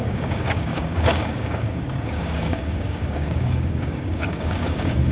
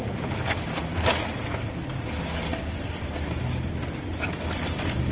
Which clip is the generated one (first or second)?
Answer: first